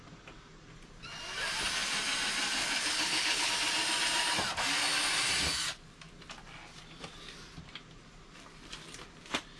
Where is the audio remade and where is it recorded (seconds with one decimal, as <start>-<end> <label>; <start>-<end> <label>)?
0.0-2.6 recorded; 2.6-3.5 remade; 3.5-9.6 recorded

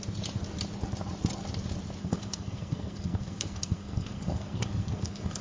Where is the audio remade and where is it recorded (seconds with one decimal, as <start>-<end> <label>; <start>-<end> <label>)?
0.0-2.0 recorded; 2.0-5.4 remade

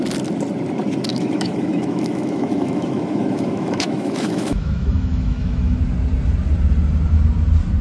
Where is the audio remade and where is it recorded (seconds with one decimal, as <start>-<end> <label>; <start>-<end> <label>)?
0.0-1.1 recorded; 1.1-5.8 remade; 5.8-7.8 recorded

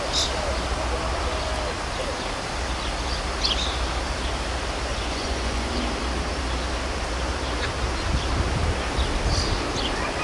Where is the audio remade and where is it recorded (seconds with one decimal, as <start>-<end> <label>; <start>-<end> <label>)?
0.0-4.9 recorded; 4.9-5.7 remade; 5.7-10.2 recorded

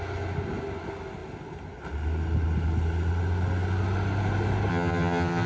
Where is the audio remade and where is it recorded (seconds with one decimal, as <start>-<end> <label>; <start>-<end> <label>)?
0.0-4.7 recorded; 4.7-5.5 remade